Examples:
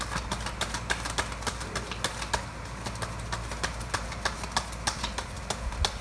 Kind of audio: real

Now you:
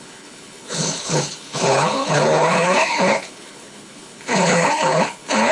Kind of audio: fake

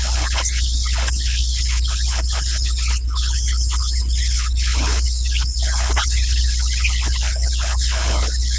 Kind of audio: fake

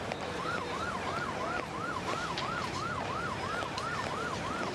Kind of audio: real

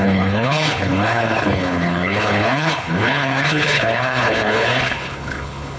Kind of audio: fake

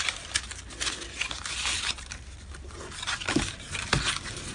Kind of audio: real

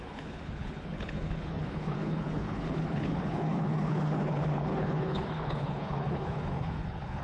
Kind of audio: fake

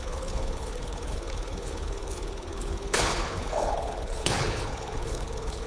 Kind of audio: fake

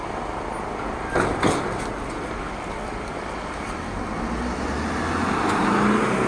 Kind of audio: real